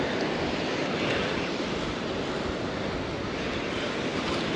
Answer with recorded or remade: recorded